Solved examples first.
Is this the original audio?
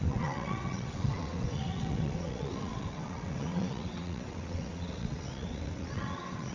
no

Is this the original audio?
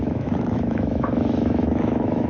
no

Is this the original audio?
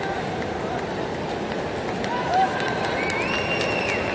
yes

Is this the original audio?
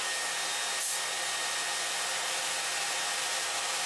yes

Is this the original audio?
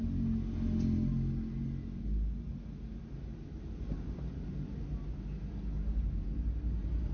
yes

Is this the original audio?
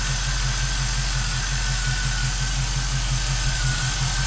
yes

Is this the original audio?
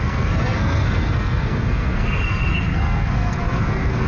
no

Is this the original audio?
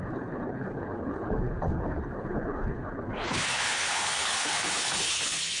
no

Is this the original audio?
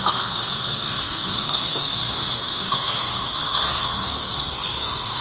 no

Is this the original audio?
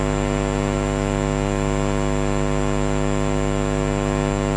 yes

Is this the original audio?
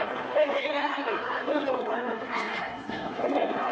no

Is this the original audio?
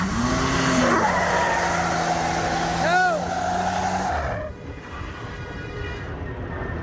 yes